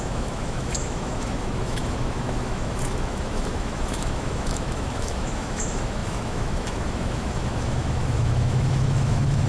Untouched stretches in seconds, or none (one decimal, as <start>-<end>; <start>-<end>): none